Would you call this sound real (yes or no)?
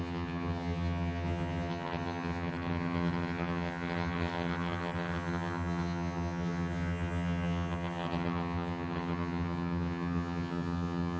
no